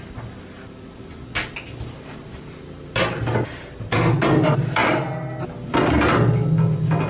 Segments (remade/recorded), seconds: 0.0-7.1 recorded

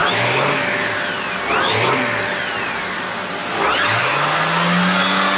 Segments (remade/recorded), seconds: 0.0-1.1 remade; 1.1-5.4 recorded

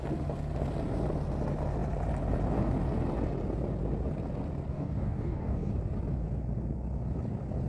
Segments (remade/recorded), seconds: 0.0-4.7 recorded; 4.7-5.7 remade; 5.7-7.7 recorded